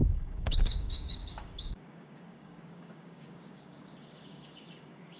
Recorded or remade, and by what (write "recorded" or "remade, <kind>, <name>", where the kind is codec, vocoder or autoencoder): remade, codec, DAC